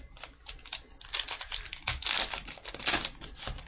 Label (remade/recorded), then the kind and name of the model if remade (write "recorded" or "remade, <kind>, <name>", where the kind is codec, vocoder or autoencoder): recorded